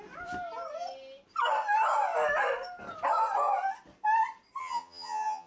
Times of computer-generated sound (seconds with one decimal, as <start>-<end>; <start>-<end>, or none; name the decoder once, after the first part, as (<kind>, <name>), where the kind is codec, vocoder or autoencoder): 4.6-5.5 (vocoder, HiFi-GAN)